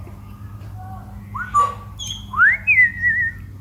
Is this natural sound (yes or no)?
yes